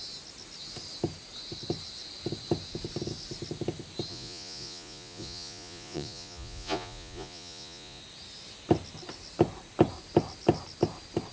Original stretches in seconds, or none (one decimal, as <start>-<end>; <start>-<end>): 0.0-4.1; 8.0-11.3